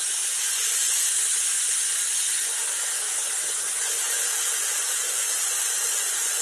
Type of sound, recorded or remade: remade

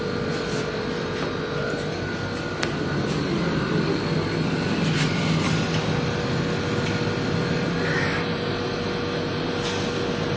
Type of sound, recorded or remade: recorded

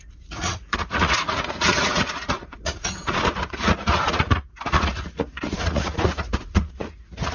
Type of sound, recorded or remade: remade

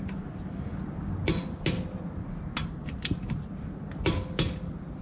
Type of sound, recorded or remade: recorded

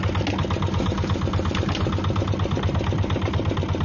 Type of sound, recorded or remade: recorded